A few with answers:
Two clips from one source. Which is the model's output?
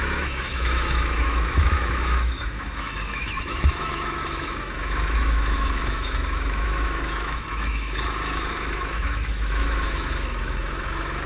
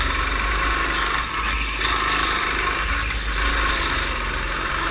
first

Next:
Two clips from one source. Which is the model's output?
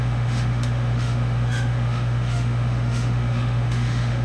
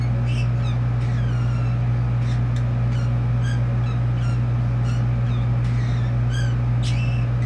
first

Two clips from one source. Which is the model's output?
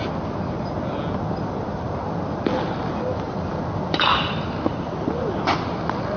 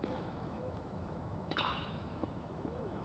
second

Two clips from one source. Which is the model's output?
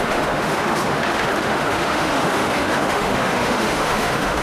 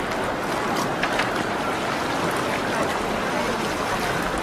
first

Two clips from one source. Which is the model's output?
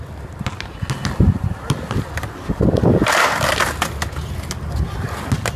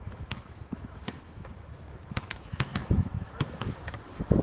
second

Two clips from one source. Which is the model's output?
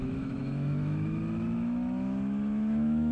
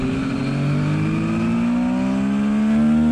first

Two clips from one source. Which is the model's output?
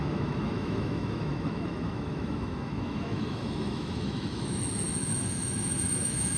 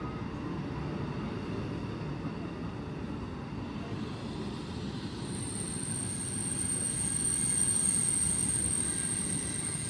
first